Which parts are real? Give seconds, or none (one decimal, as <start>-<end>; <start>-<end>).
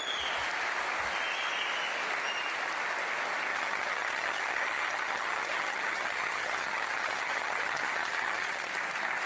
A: 0.0-3.5; 8.7-9.3